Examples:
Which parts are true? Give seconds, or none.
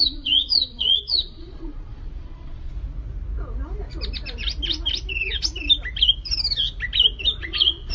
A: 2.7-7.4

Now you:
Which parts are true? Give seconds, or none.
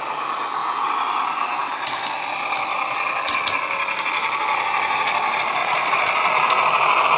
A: 0.0-5.6; 6.3-7.2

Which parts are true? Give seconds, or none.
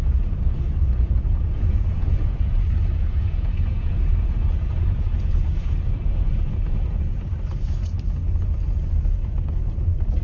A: 7.3-10.2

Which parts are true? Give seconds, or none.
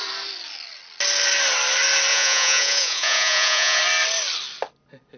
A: 0.0-2.1; 3.8-5.2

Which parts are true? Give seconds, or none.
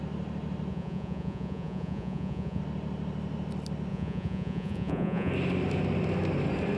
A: 0.0-0.7; 2.6-3.9; 5.3-6.8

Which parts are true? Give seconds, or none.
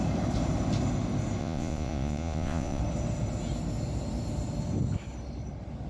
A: 0.0-1.4; 2.8-5.9